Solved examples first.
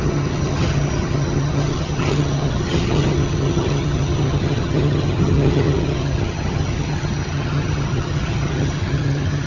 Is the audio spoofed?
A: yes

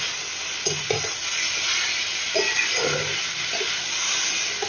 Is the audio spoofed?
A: no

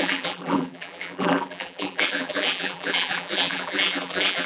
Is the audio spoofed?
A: yes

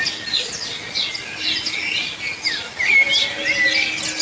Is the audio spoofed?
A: no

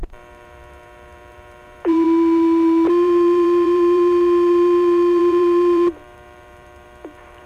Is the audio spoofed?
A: yes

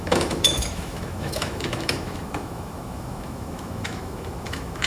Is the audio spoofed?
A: yes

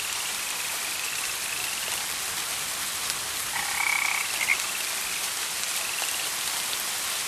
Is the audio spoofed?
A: no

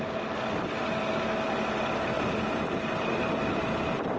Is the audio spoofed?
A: no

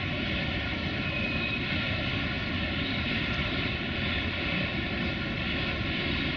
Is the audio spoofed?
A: no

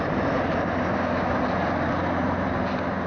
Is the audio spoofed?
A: no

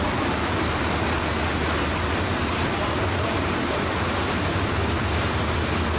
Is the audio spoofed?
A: no